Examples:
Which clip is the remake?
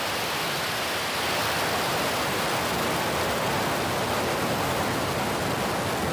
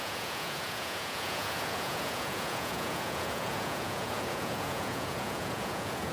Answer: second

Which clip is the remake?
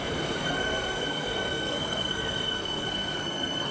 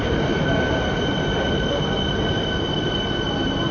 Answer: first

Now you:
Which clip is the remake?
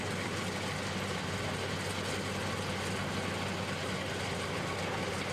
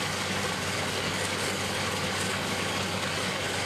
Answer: second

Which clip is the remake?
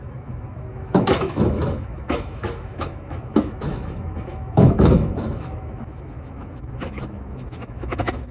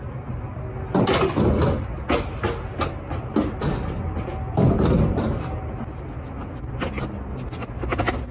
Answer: first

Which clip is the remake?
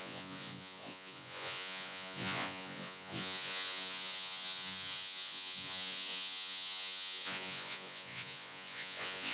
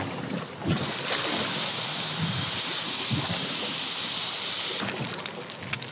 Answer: first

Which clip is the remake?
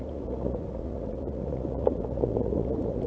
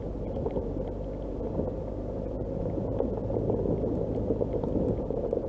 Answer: first